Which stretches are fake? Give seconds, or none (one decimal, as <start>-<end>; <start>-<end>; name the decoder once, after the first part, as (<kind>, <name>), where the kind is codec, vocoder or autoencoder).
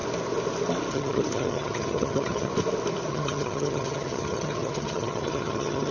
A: 0.9-2.5 (vocoder, HiFi-GAN); 3.1-5.9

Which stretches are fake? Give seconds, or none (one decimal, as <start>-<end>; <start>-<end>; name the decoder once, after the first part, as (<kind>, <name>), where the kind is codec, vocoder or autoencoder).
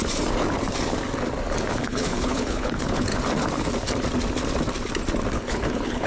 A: 1.7-3.1 (codec, HILCodec); 5.3-6.1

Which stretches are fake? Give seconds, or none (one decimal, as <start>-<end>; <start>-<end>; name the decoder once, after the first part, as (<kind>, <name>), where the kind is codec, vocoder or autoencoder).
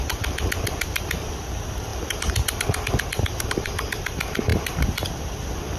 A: none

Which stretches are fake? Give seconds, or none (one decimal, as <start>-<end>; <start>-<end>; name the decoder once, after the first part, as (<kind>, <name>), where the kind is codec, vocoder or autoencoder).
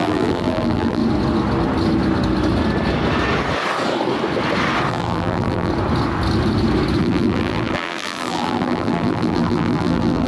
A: 0.0-1.0 (vocoder, BigVGAN v2); 4.9-5.7; 7.0-10.3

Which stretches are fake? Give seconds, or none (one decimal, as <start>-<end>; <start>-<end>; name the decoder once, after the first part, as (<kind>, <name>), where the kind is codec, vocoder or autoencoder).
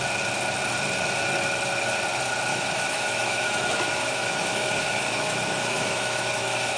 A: 2.5-6.8 (autoencoder, DAC-VAE)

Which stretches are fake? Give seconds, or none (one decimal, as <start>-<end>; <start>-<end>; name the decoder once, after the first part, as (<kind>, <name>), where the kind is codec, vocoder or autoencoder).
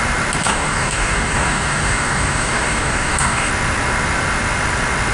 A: 0.4-3.5 (codec, DAC)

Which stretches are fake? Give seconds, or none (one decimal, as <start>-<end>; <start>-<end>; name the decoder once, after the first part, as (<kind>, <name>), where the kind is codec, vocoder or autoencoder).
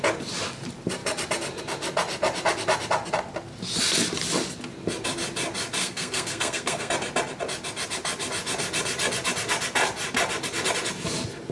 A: 5.8-6.9 (codec, SNAC)